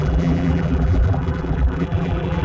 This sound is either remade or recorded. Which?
remade